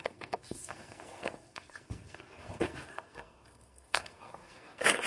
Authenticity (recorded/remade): remade